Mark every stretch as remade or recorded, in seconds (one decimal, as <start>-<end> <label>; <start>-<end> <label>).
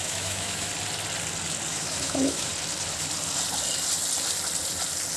0.0-0.7 remade; 0.7-1.7 recorded; 1.7-2.5 remade; 2.5-5.2 recorded